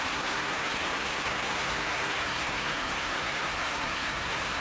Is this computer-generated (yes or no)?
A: yes